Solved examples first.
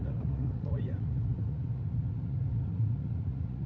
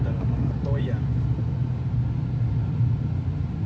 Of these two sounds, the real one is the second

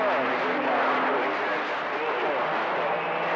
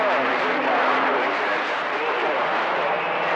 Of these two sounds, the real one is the first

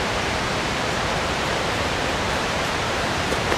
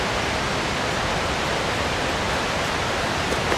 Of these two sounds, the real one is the second